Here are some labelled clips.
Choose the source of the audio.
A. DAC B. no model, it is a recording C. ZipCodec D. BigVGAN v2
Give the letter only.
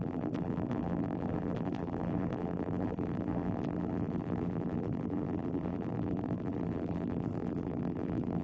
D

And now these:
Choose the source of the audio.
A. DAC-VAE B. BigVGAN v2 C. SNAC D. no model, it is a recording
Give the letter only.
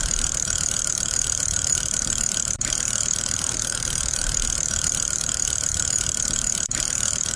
B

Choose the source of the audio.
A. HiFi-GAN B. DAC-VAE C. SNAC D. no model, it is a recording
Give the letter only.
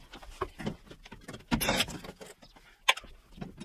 D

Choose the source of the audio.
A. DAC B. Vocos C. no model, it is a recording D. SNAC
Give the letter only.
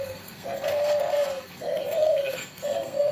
D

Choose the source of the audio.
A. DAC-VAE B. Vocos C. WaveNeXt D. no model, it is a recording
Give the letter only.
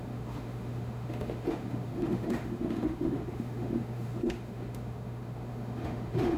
A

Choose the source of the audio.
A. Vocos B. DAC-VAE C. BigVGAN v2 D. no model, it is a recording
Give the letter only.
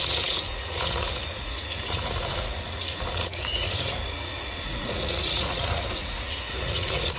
A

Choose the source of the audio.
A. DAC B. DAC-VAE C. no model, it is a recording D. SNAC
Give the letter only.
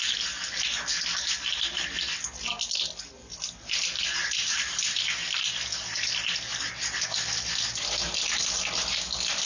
C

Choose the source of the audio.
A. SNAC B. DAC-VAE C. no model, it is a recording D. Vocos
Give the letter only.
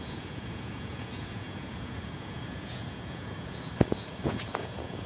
D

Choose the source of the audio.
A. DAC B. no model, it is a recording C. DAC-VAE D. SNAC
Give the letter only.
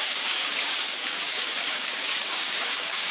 A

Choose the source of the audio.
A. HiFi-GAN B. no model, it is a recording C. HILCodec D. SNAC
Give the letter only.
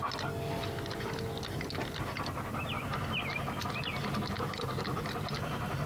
B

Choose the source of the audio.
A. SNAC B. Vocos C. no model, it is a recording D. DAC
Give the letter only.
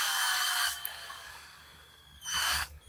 D